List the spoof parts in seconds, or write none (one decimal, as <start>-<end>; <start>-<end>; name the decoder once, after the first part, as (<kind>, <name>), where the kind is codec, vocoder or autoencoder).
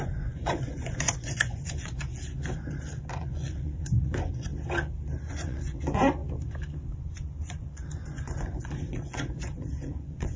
0.0-2.1 (vocoder, Vocos); 3.1-4.5; 5.3-6.2; 6.9-10.4